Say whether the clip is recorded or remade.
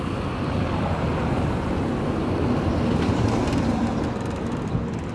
recorded